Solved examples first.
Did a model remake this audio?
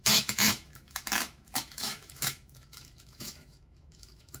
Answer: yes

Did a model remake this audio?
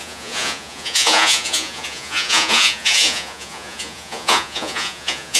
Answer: yes